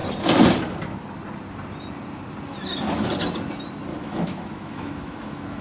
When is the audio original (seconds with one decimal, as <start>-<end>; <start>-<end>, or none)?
0.0-3.9